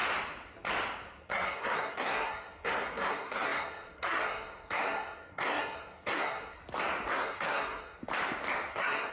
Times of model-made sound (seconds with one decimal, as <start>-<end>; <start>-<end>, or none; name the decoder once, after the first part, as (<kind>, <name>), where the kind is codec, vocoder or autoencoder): 1.2-6.6 (codec, SNAC); 7.1-8.0; 8.7-9.1